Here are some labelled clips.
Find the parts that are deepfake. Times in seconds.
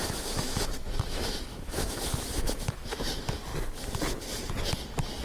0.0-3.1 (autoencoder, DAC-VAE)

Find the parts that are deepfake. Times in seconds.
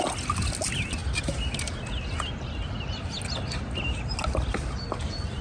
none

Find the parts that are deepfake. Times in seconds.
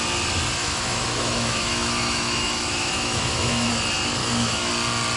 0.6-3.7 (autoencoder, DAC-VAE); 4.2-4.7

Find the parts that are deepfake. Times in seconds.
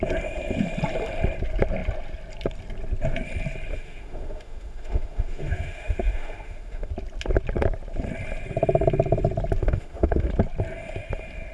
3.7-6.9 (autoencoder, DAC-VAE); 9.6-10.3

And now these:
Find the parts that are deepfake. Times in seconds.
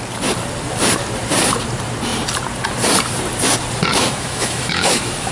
3.9-5.3 (autoencoder, DAC-VAE)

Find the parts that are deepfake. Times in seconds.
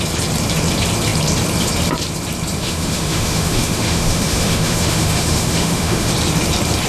2.6-6.1 (autoencoder, DAC-VAE)